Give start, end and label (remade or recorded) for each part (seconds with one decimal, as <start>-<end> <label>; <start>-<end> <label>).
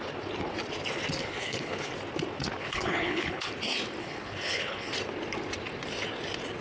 0.0-1.2 recorded; 1.2-1.9 remade; 1.9-2.6 recorded; 2.6-3.5 remade; 3.5-4.0 recorded; 4.0-4.9 remade; 4.9-6.6 recorded